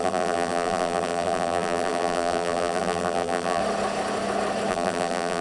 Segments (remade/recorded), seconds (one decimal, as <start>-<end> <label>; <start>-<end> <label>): 0.0-3.6 remade; 3.6-4.7 recorded; 4.7-5.4 remade